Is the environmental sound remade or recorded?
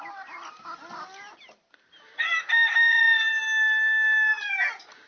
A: recorded